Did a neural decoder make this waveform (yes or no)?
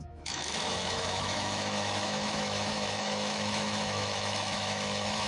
yes